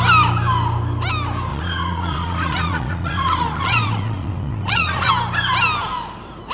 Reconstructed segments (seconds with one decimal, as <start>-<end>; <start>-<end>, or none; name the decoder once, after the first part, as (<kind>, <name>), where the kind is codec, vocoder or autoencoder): 1.5-5.1 (vocoder, Vocos)